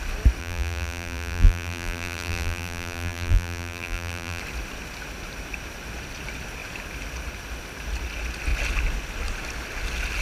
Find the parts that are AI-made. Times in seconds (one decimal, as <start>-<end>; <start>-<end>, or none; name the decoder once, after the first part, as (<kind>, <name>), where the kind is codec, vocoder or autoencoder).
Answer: 0.4-4.4 (vocoder, BigVGAN v2)